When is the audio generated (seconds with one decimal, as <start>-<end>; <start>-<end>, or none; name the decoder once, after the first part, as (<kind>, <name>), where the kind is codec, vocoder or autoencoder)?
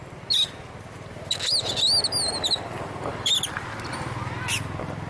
none